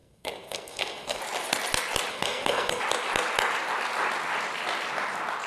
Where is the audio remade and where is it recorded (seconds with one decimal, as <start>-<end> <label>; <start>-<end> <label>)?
0.0-1.2 remade; 1.2-2.1 recorded; 2.1-2.8 remade; 2.8-5.5 recorded